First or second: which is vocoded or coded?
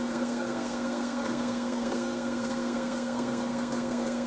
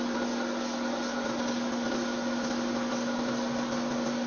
first